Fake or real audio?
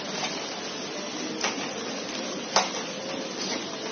real